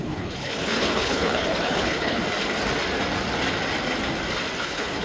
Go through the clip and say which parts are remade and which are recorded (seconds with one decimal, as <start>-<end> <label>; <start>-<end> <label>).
0.0-2.2 remade; 2.2-4.6 recorded; 4.6-5.0 remade